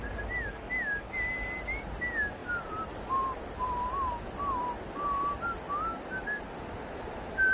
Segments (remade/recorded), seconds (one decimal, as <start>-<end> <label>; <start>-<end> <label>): 0.0-7.5 recorded

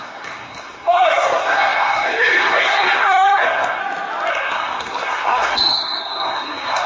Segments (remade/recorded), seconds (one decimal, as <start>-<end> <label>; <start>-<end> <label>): 0.0-3.8 remade; 3.8-4.3 recorded; 4.3-6.9 remade

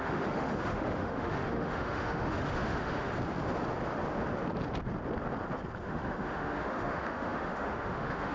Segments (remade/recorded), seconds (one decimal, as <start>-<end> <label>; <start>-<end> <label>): 0.0-3.1 remade; 3.1-5.8 recorded; 5.8-8.3 remade

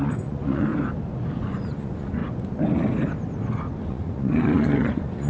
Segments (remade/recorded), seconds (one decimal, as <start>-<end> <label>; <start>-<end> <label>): 0.0-0.7 remade; 0.7-1.4 recorded; 1.4-2.2 remade; 2.2-3.9 recorded; 3.9-5.3 remade

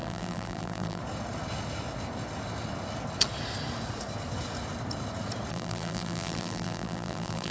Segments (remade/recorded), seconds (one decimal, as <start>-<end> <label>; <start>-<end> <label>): 0.0-1.0 remade; 1.0-5.5 recorded; 5.5-7.5 remade

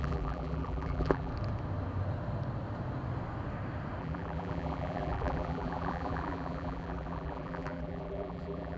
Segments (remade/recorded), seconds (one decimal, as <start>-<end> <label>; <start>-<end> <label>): 0.0-1.3 remade; 1.3-4.0 recorded; 4.0-8.8 remade

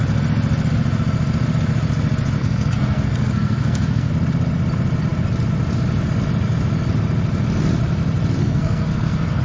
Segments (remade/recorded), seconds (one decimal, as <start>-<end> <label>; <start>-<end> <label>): 0.0-2.4 recorded; 2.4-4.1 remade; 4.1-8.4 recorded; 8.4-9.4 remade